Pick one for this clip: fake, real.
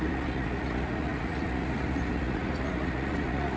fake